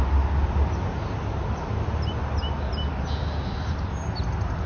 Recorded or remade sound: recorded